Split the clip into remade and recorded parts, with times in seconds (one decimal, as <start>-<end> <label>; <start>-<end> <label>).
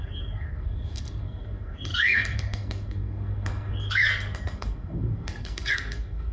0.0-6.3 remade